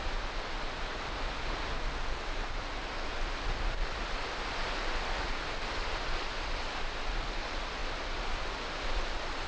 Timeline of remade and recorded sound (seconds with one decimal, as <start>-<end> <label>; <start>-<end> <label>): 0.0-9.5 recorded